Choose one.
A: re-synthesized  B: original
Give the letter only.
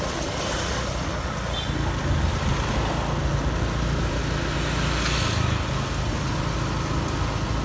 B